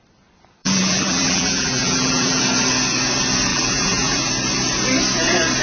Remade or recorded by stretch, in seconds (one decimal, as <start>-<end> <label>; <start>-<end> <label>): 0.0-0.6 recorded; 0.6-2.4 remade; 2.4-3.5 recorded; 3.5-4.3 remade; 4.3-5.6 recorded